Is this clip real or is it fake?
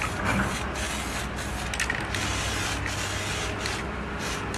real